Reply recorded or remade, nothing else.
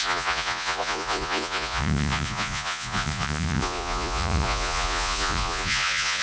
remade